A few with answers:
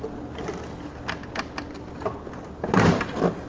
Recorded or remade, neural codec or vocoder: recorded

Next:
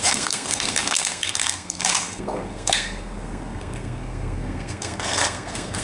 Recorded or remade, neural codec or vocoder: remade, codec, SNAC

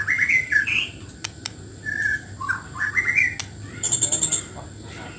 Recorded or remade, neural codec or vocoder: recorded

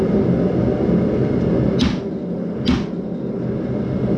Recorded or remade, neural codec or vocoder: recorded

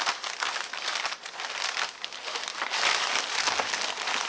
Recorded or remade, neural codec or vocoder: recorded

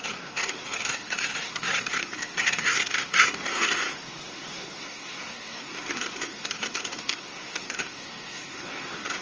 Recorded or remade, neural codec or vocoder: remade, codec, SNAC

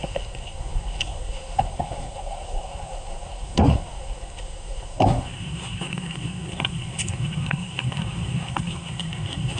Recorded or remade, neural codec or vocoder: remade, codec, SNAC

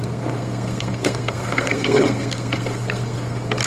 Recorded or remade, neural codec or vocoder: remade, codec, SNAC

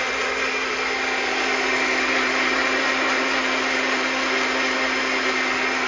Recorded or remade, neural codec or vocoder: recorded